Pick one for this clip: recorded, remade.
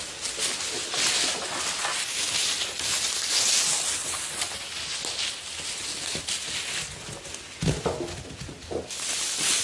recorded